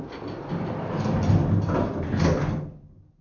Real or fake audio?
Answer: real